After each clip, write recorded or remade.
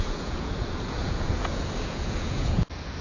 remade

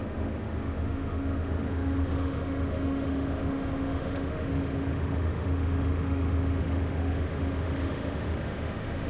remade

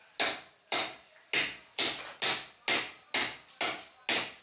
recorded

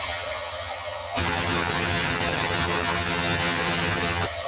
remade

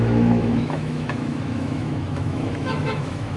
remade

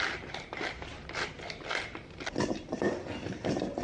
recorded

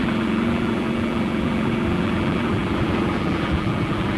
remade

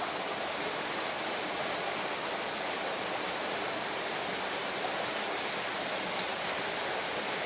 recorded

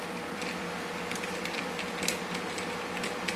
recorded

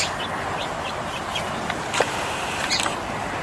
remade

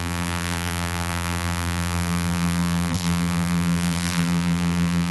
remade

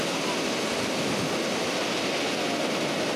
recorded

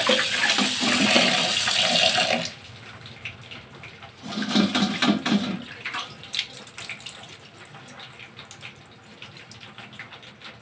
recorded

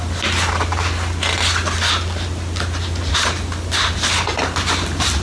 recorded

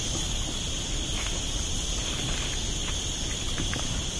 recorded